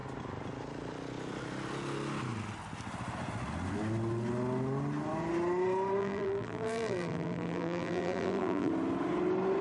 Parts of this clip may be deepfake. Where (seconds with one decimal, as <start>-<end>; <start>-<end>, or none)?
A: 6.0-8.7